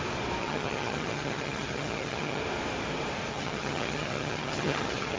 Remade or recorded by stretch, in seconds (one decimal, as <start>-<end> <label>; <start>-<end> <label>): 0.0-0.4 recorded; 0.4-2.4 remade; 2.4-3.3 recorded; 3.3-5.2 remade